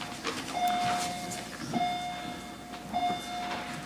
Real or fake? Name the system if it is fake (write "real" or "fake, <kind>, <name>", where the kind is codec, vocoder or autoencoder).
real